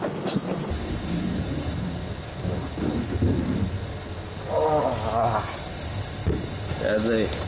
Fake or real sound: real